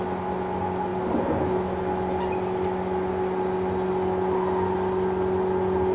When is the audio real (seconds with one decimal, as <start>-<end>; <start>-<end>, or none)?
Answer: 0.0-5.9